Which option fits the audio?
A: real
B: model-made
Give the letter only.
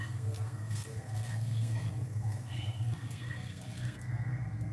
B